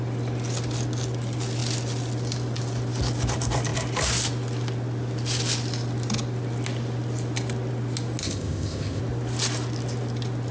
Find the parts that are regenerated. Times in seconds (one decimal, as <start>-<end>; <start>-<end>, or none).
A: 8.2-9.0